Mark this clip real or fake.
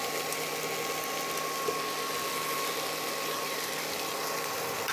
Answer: real